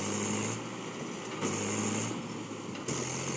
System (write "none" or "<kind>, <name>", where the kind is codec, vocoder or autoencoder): none